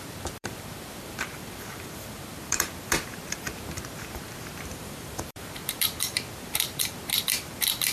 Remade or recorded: remade